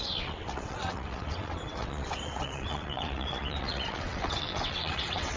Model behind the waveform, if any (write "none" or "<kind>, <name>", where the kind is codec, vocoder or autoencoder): vocoder, WaveNeXt